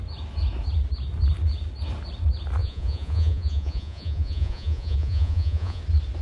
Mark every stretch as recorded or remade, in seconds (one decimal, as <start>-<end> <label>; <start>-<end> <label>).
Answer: 0.0-2.6 recorded; 2.6-5.8 remade; 5.8-6.2 recorded